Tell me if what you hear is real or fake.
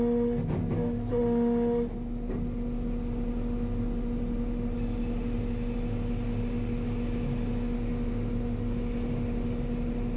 real